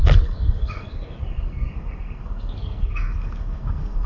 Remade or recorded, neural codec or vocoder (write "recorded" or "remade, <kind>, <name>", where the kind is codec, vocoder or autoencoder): remade, codec, SNAC